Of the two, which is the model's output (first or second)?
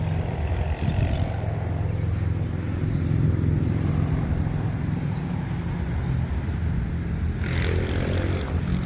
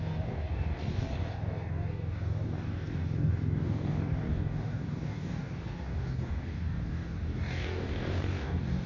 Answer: second